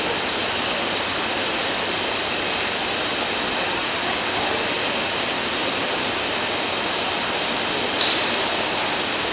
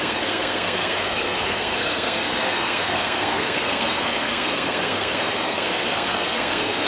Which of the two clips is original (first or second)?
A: first